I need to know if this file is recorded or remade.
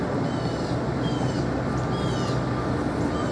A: recorded